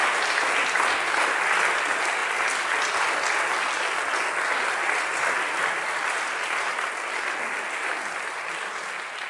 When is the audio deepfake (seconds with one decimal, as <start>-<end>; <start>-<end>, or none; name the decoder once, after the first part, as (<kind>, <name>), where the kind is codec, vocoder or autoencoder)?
none